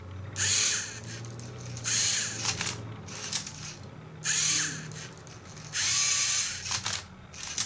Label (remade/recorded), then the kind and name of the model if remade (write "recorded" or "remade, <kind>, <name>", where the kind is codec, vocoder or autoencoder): recorded